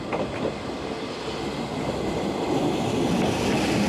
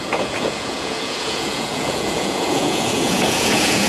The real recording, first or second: first